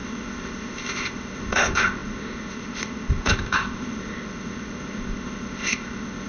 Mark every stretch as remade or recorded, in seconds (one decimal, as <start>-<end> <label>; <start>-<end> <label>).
0.0-6.3 remade